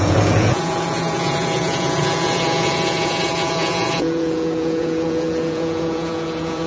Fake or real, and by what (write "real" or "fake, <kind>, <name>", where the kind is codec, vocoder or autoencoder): fake, vocoder, Vocos